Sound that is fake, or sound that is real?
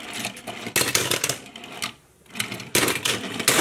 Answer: real